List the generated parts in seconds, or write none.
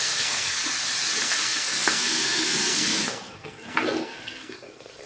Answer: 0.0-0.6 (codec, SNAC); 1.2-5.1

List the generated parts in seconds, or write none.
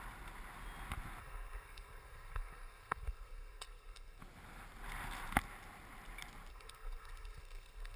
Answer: 1.2-4.2 (codec, SNAC); 6.5-8.0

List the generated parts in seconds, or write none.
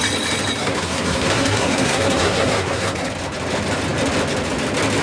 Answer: 0.6-3.1 (codec, SNAC)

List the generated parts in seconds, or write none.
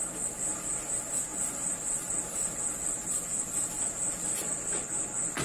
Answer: none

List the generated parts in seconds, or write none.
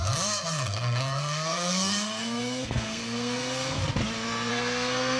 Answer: 0.0-3.8 (codec, SNAC); 4.5-5.2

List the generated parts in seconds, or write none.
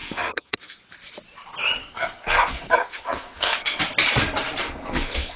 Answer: 0.0-0.8 (codec, SNAC); 1.8-3.8; 4.6-5.4